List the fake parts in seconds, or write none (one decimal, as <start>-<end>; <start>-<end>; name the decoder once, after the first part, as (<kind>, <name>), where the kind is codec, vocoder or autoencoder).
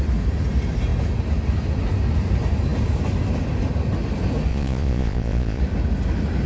4.5-5.6 (vocoder, Vocos)